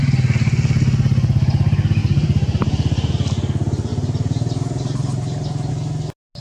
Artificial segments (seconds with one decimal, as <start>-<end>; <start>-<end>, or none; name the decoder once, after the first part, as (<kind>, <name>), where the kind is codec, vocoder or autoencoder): 2.0-3.1 (vocoder, BigVGAN v2); 3.9-5.7